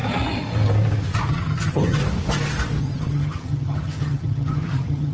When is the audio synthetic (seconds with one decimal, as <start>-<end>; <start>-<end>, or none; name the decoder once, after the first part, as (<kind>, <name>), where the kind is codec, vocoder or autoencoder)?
1.3-2.0 (vocoder, HiFi-GAN); 2.8-5.1